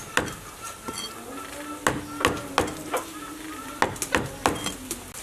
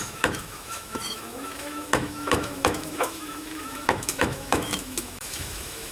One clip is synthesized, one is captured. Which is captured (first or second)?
first